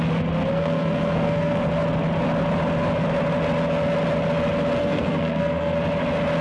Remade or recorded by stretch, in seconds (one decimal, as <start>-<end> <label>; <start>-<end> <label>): 0.0-0.5 recorded; 0.5-1.6 remade; 1.6-4.8 recorded; 4.8-5.8 remade; 5.8-6.4 recorded